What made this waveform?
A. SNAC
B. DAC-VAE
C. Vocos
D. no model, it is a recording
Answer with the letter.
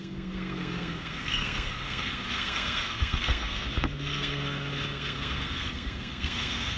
A